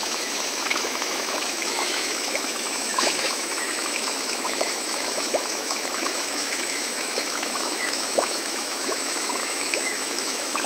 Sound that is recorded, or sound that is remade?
remade